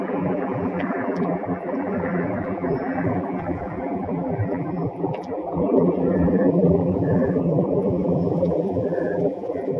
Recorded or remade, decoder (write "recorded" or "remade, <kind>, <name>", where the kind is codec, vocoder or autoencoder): remade, vocoder, BigVGAN v2